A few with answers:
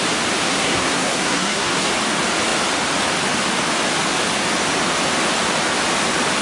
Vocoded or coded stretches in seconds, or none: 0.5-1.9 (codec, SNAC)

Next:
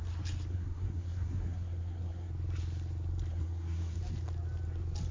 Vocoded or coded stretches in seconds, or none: 0.5-2.3 (codec, SNAC); 3.3-4.0